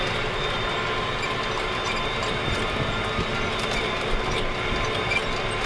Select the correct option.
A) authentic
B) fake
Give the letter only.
A